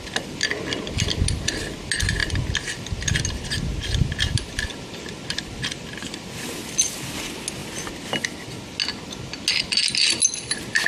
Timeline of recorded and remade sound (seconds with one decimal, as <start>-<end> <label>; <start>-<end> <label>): 0.0-10.9 recorded